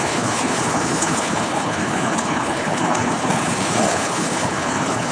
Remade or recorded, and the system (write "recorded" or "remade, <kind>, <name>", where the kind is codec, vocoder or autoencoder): remade, codec, HILCodec